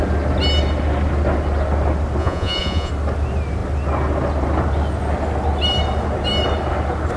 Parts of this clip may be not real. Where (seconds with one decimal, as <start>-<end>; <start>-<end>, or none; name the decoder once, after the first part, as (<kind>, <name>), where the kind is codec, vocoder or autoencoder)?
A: 2.2-2.9 (vocoder, Vocos)